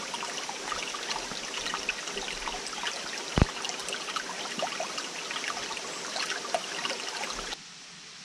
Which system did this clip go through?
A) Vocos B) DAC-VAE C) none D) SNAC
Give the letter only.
C